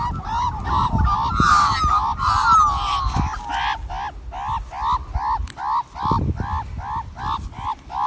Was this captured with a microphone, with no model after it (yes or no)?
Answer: yes